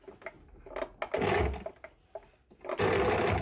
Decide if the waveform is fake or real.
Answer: real